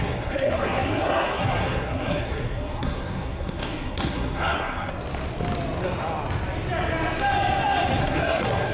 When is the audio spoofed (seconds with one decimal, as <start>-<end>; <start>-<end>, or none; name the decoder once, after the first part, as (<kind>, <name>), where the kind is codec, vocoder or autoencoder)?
0.0-4.9 (codec, SNAC); 8.0-8.7

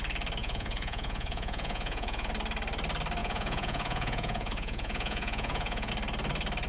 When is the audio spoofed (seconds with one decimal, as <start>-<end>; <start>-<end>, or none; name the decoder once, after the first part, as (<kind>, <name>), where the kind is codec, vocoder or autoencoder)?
0.4-2.3 (vocoder, Vocos); 3.2-5.9

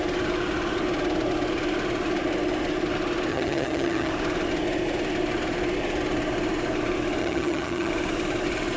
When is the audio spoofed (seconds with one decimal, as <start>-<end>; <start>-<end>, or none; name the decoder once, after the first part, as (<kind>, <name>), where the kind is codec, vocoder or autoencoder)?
3.3-4.1 (vocoder, HiFi-GAN); 7.2-7.9

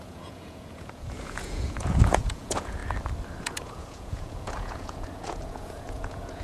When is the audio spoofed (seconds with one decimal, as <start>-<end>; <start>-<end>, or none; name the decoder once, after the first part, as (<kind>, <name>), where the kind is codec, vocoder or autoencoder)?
0.0-2.8 (vocoder, Vocos); 3.4-6.4

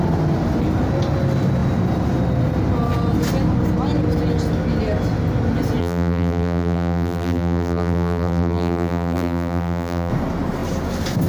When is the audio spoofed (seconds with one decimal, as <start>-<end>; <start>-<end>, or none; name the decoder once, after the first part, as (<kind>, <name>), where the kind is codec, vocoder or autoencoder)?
5.8-10.1 (vocoder, BigVGAN v2)

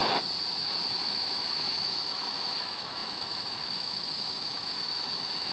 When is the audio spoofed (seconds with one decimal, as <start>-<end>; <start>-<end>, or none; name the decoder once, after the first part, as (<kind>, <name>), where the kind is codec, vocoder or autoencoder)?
0.9-5.5 (autoencoder, DAC-VAE)

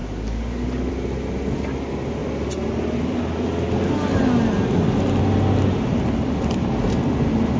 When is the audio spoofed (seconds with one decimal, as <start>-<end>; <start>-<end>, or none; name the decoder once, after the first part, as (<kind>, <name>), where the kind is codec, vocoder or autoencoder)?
0.0-0.9 (codec, DAC)

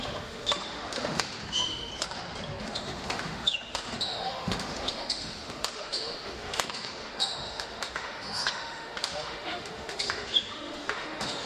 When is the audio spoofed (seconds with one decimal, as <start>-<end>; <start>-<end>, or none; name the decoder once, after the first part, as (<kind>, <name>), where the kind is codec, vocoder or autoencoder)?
0.0-1.9 (autoencoder, DAC-VAE); 2.6-11.5